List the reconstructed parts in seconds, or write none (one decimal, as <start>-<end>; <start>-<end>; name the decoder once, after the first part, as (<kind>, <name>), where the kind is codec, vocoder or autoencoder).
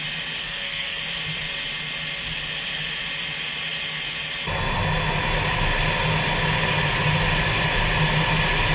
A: 0.4-1.0 (codec, SNAC)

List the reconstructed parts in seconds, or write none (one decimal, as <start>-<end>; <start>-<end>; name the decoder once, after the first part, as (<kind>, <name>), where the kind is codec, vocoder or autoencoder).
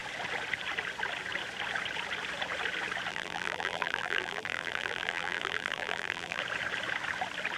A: 3.1-6.4 (vocoder, BigVGAN v2)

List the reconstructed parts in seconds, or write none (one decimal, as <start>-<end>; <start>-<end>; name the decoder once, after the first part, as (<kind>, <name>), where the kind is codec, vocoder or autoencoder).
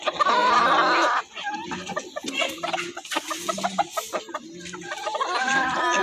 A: none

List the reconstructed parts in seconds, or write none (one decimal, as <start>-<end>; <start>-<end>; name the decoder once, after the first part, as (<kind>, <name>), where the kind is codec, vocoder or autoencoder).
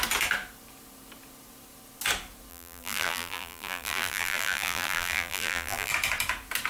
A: 2.5-5.9 (vocoder, BigVGAN v2)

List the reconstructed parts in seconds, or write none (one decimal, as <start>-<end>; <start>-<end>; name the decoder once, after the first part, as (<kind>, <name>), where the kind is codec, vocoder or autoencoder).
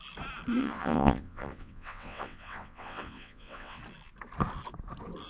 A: 0.6-3.8 (vocoder, WaveNeXt)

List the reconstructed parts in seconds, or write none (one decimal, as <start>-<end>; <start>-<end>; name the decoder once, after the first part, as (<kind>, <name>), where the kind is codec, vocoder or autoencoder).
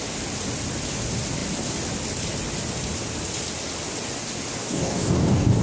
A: 4.6-5.6 (codec, DAC)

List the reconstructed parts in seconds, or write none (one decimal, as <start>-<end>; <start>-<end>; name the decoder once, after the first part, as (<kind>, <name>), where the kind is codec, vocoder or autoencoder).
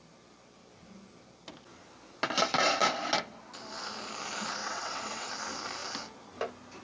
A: 4.6-5.3 (vocoder, WaveNeXt)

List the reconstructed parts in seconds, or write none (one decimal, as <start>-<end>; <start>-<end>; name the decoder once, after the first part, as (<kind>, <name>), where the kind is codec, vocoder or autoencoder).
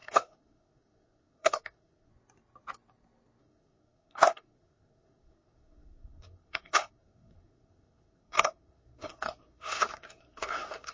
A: 0.0-2.1 (codec, SNAC); 3.4-10.9